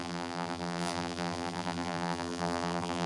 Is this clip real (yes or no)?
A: no